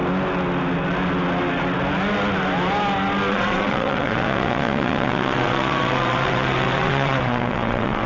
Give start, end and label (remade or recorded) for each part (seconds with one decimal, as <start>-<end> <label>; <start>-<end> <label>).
0.0-3.3 recorded; 3.3-8.1 remade